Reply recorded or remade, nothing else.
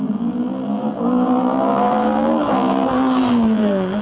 remade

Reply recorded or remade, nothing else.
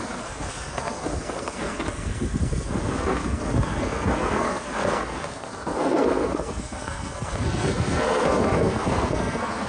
remade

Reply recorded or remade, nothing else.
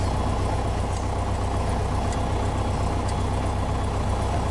recorded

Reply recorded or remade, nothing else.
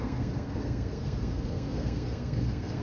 remade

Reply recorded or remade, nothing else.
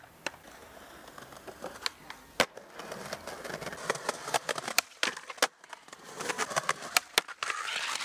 recorded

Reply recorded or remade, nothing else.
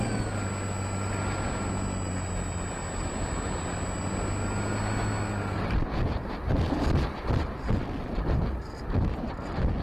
recorded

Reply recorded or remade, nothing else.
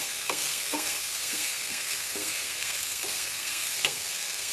remade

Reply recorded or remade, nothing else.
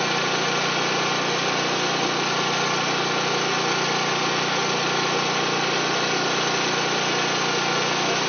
recorded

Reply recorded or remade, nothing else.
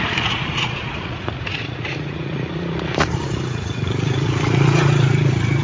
remade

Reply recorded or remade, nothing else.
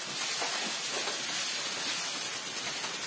recorded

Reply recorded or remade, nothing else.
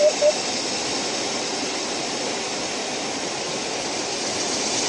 recorded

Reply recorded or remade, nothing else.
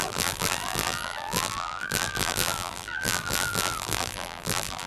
remade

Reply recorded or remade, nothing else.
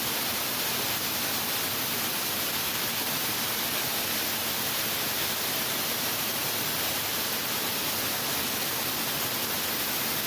recorded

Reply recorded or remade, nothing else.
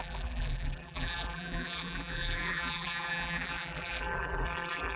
remade